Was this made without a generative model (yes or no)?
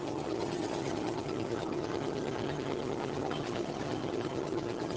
no